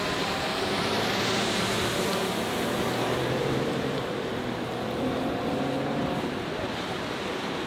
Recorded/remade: remade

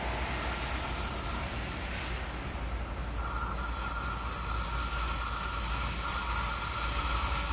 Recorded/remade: recorded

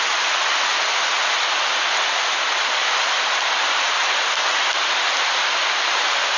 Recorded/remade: recorded